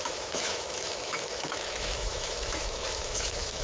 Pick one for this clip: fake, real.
fake